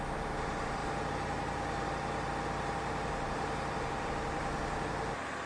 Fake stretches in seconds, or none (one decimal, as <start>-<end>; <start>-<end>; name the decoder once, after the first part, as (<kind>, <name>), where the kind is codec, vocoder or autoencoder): 0.0-5.5 (vocoder, BigVGAN v2)